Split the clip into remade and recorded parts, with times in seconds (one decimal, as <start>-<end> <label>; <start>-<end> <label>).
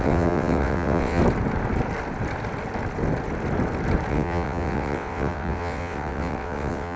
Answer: 0.0-1.2 remade; 1.2-4.1 recorded; 4.1-7.0 remade